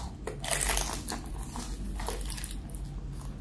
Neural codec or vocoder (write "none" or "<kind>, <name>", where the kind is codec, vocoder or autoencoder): none